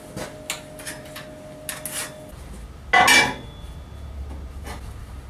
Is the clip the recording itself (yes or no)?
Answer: yes